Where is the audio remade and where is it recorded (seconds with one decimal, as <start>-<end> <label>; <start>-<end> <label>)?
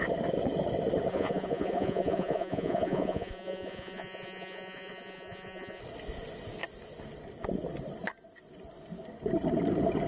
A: 0.0-1.1 recorded; 1.1-5.8 remade; 5.8-10.1 recorded